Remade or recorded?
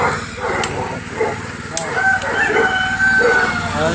recorded